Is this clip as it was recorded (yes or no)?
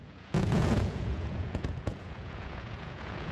no